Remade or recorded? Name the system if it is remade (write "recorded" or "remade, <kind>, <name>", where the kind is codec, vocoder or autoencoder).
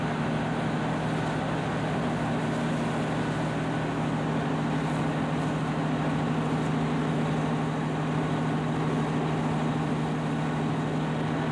recorded